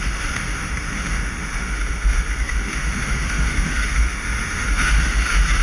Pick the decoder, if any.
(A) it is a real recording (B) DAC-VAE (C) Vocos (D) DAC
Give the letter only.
B